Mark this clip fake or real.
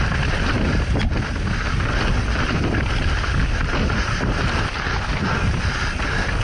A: real